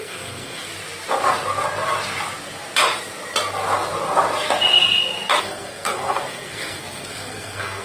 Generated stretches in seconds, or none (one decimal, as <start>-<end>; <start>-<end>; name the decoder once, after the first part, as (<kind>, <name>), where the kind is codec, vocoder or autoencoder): 0.0-0.7 (codec, SNAC); 5.4-7.8